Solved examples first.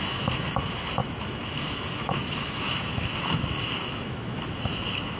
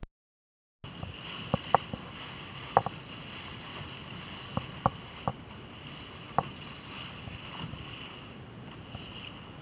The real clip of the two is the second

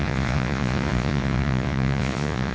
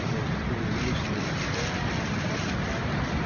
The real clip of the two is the second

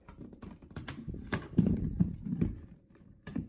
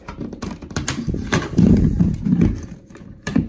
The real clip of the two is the second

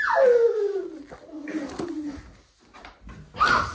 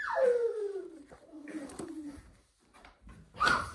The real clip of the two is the first